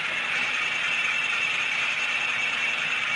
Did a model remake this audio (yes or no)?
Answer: yes